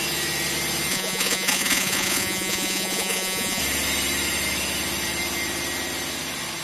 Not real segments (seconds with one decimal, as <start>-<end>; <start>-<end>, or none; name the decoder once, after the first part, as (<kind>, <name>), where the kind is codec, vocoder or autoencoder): 0.9-3.6 (vocoder, Vocos)